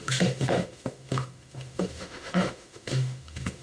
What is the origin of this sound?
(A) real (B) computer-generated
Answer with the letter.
B